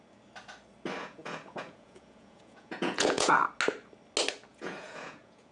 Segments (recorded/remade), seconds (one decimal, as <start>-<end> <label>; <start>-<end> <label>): 0.0-1.0 recorded; 1.0-3.3 remade; 3.3-4.5 recorded; 4.5-5.5 remade